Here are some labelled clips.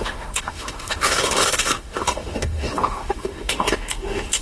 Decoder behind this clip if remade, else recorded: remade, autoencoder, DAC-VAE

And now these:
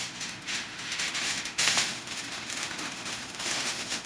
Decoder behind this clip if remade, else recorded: remade, autoencoder, DAC-VAE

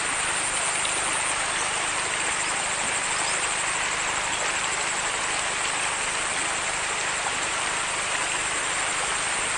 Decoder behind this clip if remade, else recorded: recorded